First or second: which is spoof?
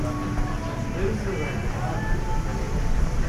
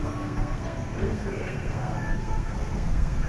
second